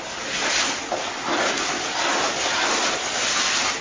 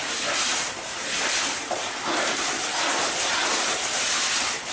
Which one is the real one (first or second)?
first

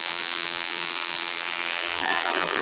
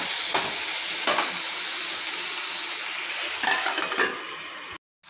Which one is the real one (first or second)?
second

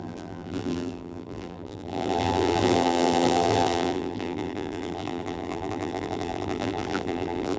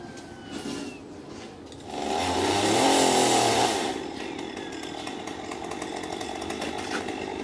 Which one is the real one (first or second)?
second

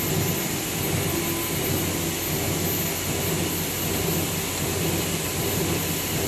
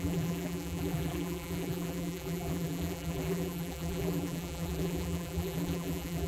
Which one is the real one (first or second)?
first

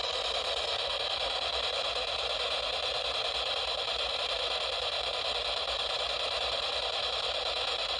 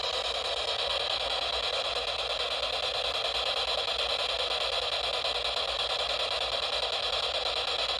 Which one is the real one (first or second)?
second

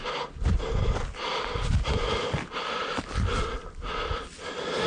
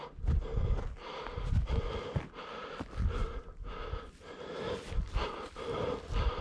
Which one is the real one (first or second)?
second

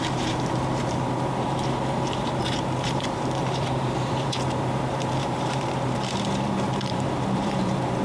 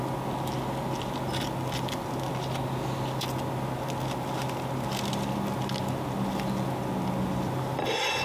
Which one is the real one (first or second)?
second